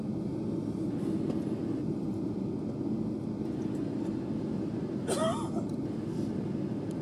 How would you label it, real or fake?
real